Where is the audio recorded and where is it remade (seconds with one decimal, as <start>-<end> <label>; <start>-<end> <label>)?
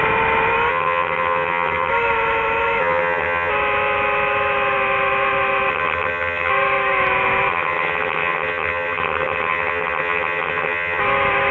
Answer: 0.0-0.7 recorded; 0.7-1.9 remade; 1.9-2.8 recorded; 2.8-3.5 remade; 3.5-5.7 recorded; 5.7-6.5 remade; 6.5-7.5 recorded; 7.5-11.0 remade; 11.0-11.5 recorded